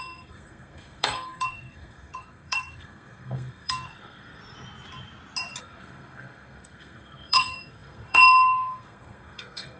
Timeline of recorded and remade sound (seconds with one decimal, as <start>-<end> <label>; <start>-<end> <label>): 0.0-4.4 remade; 4.4-5.6 recorded; 5.6-9.8 remade